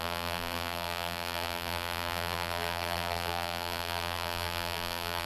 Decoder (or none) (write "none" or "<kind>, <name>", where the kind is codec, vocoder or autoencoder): vocoder, BigVGAN v2